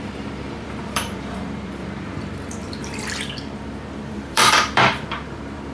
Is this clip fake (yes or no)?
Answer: yes